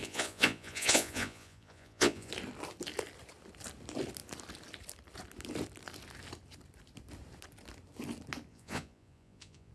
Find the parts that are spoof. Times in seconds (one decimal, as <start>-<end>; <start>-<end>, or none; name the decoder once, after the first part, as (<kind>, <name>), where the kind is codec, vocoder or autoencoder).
0.0-2.3 (vocoder, Vocos); 8.5-9.7